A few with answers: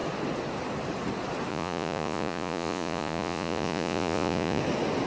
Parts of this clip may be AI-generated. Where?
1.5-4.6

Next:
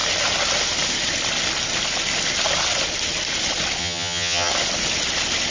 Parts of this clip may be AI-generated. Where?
3.8-4.5

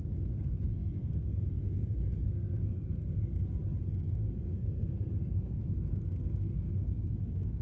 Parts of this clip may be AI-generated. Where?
0.0-3.3; 3.9-7.6

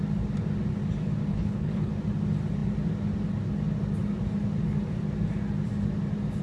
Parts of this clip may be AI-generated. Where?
1.3-1.9

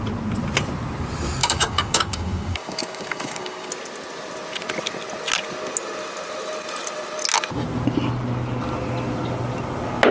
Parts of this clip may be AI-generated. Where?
1.4-3.7

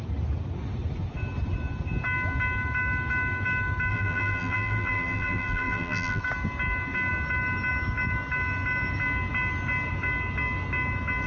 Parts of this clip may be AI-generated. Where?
3.9-6.2